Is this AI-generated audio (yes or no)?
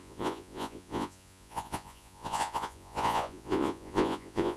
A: yes